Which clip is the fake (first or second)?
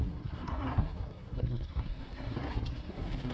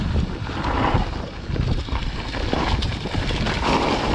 first